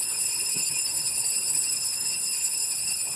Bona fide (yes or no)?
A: no